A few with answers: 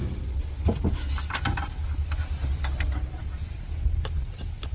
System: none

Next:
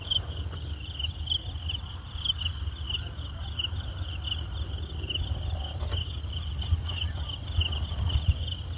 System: none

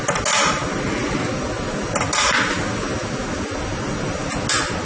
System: none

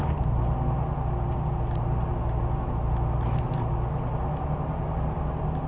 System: none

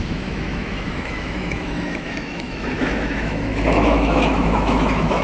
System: autoencoder, DAC-VAE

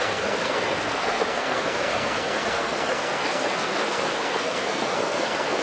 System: codec, SNAC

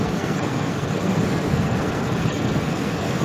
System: codec, SNAC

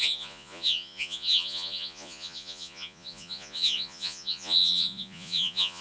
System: vocoder, Vocos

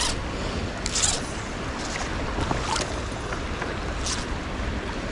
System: none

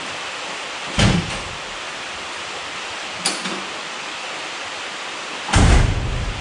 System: none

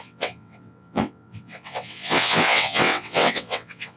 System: vocoder, WaveNeXt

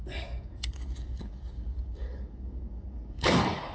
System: codec, DAC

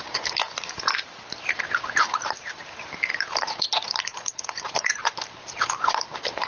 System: vocoder, BigVGAN v2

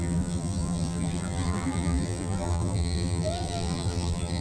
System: vocoder, BigVGAN v2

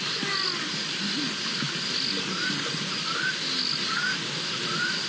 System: none